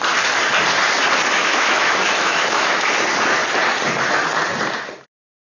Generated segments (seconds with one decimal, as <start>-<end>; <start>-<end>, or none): 1.4-2.9